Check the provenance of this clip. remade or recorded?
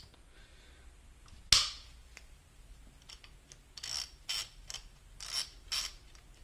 recorded